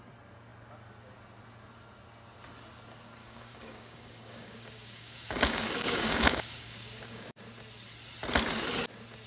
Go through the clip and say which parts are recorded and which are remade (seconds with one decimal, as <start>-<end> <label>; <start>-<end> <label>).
0.0-3.2 recorded; 3.2-7.4 remade; 7.4-9.3 recorded